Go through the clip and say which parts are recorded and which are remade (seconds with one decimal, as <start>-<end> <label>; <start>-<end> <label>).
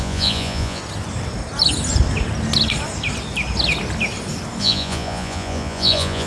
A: 0.0-0.8 remade; 0.8-4.6 recorded; 4.6-6.3 remade